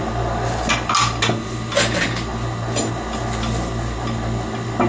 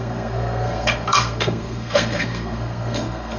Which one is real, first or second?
first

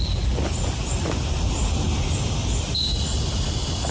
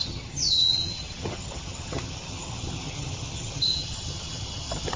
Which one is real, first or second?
first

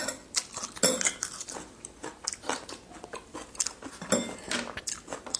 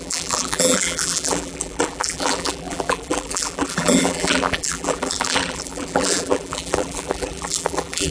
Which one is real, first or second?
first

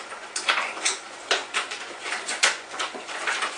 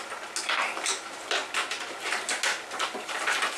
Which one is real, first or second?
second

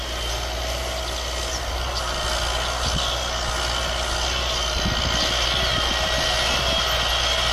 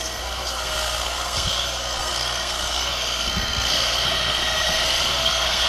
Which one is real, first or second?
first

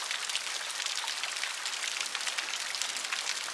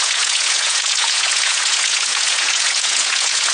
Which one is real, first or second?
first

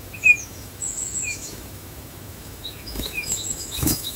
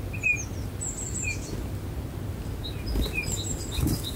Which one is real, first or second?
second